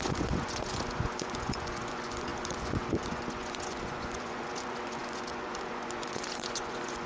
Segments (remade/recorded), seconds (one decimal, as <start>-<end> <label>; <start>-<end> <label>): 0.0-7.1 remade

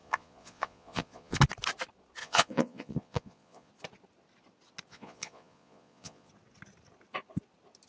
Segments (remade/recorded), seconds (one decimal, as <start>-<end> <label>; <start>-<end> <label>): 0.0-1.4 remade; 1.4-2.2 recorded; 2.2-3.7 remade; 3.7-4.9 recorded; 4.9-6.3 remade; 6.3-7.9 recorded